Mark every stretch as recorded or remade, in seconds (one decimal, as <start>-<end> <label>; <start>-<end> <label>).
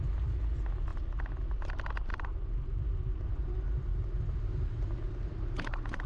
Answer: 0.0-2.1 recorded; 2.1-6.1 remade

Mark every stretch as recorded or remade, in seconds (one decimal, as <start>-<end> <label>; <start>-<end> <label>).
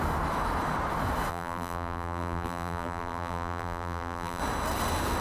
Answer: 0.0-1.3 recorded; 1.3-4.4 remade; 4.4-5.2 recorded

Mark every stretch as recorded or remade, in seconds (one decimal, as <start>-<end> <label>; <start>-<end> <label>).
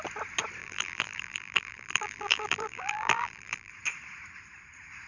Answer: 0.0-0.6 recorded; 0.6-3.7 remade; 3.7-5.1 recorded